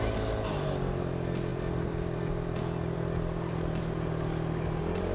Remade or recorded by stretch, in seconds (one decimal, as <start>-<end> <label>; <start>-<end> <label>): 0.0-1.5 recorded; 1.5-2.6 remade; 2.6-5.1 recorded